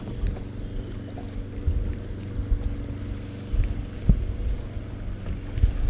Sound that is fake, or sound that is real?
real